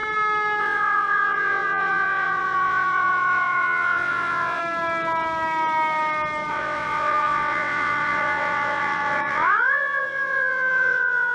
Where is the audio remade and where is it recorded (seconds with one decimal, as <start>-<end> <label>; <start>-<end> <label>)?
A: 0.0-0.6 recorded; 0.6-4.6 remade; 4.6-6.5 recorded; 6.5-11.3 remade